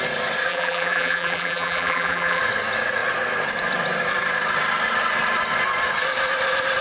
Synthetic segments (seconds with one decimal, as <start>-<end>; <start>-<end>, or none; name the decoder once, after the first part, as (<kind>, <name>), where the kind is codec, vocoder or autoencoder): 0.5-2.4 (vocoder, BigVGAN v2)